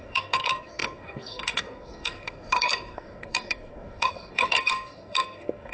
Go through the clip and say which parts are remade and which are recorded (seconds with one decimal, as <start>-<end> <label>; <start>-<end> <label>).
0.0-5.7 remade